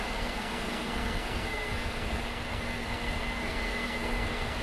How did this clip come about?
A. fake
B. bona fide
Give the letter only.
A